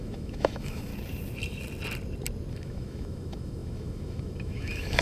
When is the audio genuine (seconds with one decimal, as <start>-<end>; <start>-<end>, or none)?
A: 0.9-2.5